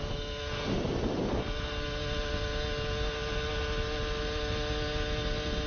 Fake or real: real